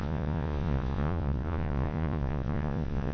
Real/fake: fake